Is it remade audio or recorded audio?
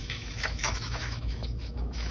remade